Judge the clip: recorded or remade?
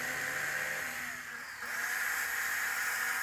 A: recorded